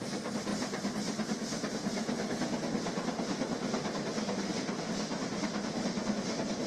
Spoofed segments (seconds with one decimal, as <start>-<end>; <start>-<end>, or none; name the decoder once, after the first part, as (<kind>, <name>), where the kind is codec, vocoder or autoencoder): none